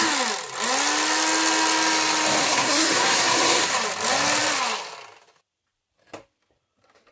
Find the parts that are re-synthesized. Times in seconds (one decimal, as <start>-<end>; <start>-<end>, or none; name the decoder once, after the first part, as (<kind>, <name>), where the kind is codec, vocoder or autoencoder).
2.4-3.7 (codec, SNAC)